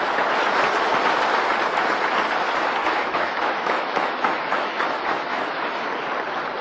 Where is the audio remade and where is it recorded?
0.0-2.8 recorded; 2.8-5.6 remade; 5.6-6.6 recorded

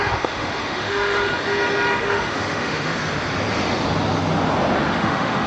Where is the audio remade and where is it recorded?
0.0-1.3 remade; 1.3-2.0 recorded; 2.0-2.9 remade; 2.9-4.9 recorded; 4.9-5.5 remade